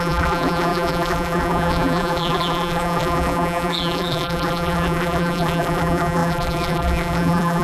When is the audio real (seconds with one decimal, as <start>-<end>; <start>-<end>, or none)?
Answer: none